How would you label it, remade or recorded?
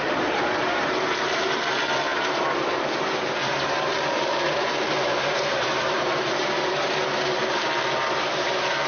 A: remade